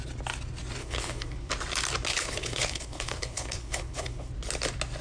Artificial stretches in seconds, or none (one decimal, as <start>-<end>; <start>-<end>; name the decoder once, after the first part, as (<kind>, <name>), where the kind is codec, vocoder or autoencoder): 0.8-1.5 (codec, HILCodec); 2.1-4.3